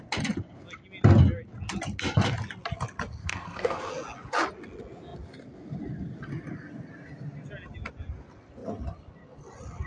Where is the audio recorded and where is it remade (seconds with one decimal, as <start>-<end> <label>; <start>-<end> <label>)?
0.0-3.2 recorded; 3.2-3.9 remade; 3.9-9.9 recorded

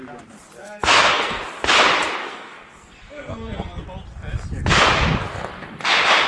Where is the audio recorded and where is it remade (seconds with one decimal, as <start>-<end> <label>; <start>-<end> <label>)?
0.0-0.6 recorded; 0.6-1.4 remade; 1.4-2.2 recorded; 2.2-3.8 remade; 3.8-6.3 recorded

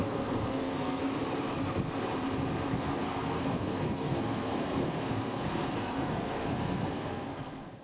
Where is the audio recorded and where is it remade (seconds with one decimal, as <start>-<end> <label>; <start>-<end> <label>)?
0.0-1.0 remade; 1.0-2.7 recorded; 2.7-7.8 remade

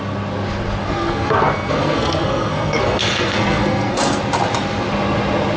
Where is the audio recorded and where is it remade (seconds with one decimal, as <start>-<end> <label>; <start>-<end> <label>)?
0.0-0.8 recorded; 0.8-4.2 remade; 4.2-5.6 recorded

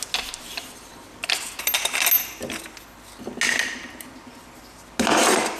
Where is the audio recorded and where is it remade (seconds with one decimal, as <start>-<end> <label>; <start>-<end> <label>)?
0.0-5.6 recorded

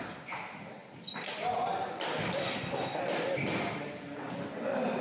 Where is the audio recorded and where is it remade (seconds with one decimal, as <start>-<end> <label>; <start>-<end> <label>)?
0.0-2.4 recorded; 2.4-3.0 remade; 3.0-5.0 recorded

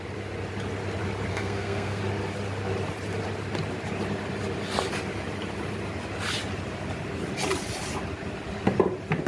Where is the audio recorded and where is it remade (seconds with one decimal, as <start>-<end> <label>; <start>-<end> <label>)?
0.0-1.3 recorded; 1.3-2.0 remade; 2.0-9.3 recorded

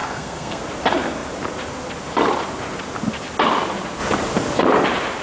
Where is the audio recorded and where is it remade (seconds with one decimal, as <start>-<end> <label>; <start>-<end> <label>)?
0.0-0.6 remade; 0.6-5.2 recorded